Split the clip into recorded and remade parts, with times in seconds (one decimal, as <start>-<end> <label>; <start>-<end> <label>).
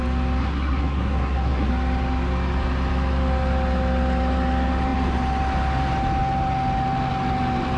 0.0-0.4 recorded; 0.4-1.7 remade; 1.7-7.8 recorded